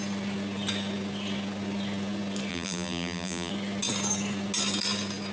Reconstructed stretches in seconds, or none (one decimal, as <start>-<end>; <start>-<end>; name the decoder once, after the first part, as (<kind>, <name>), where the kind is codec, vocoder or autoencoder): 2.5-3.5 (vocoder, BigVGAN v2)